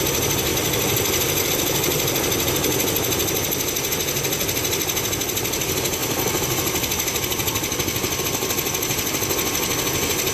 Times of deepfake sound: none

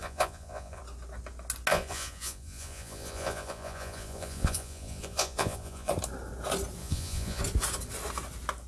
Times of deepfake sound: 0.0-0.8; 1.7-5.9; 6.8-7.4